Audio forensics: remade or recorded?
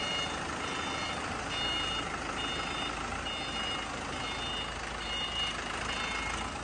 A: recorded